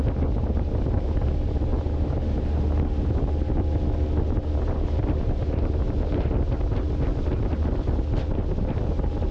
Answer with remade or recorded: recorded